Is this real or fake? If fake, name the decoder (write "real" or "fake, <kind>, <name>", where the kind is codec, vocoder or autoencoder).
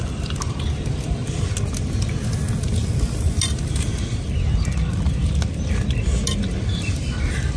real